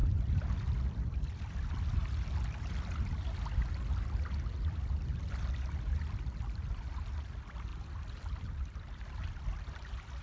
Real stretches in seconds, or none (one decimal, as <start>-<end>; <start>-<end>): 0.0-10.2